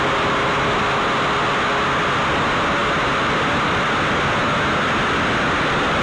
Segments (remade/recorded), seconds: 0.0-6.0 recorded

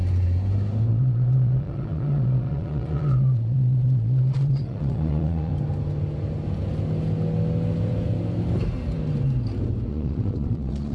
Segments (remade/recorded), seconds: 0.0-0.9 recorded; 0.9-5.5 remade; 5.5-9.9 recorded; 9.9-10.9 remade

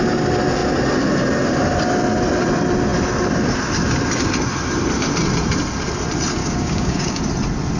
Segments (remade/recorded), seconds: 0.0-6.4 recorded; 6.4-7.2 remade; 7.2-7.8 recorded

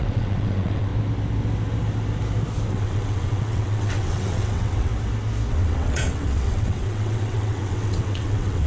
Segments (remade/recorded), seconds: 0.0-0.9 remade; 0.9-2.7 recorded; 2.7-4.9 remade; 4.9-5.5 recorded; 5.5-8.7 remade

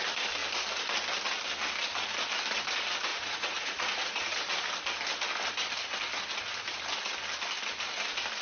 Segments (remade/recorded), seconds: 0.0-3.1 recorded; 3.1-4.3 remade; 4.3-8.4 recorded

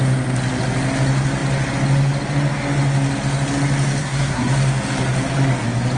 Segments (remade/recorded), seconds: 0.0-4.0 recorded; 4.0-4.5 remade; 4.5-6.0 recorded